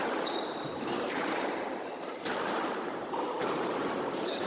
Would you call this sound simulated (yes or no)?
yes